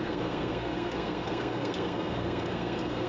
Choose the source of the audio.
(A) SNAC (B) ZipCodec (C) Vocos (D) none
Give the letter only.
A